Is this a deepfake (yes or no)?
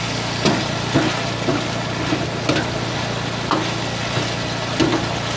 no